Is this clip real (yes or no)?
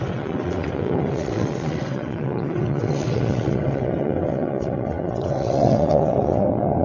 no